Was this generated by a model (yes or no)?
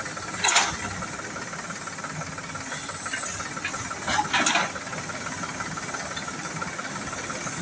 no